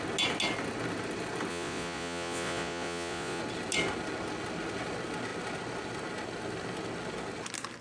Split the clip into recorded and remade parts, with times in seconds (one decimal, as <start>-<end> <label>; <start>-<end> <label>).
0.0-1.5 recorded; 1.5-3.4 remade; 3.4-7.8 recorded